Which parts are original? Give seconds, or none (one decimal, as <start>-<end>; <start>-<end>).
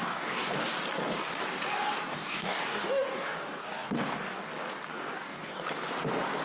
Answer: 0.6-2.1; 4.5-4.9; 5.6-6.4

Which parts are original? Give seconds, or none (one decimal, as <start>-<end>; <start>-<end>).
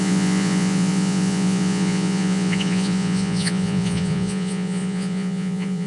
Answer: none